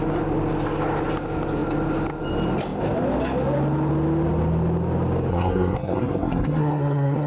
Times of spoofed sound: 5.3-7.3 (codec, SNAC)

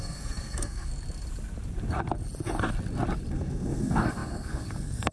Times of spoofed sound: 0.0-0.9 (codec, SNAC); 3.3-5.1

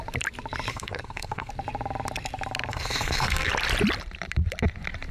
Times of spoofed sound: 0.7-1.5 (codec, SNAC); 2.7-3.5

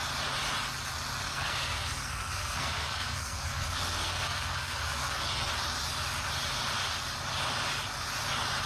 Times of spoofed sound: 1.3-5.3 (codec, SNAC)

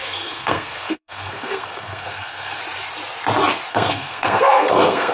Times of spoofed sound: 0.0-2.6 (codec, SNAC); 3.7-5.1

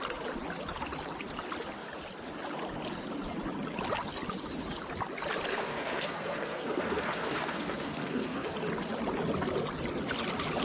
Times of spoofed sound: 5.5-8.5 (codec, SNAC)

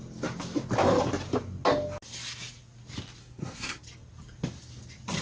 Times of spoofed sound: 3.2-3.8 (codec, SNAC)

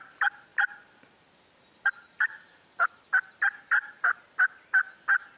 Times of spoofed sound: none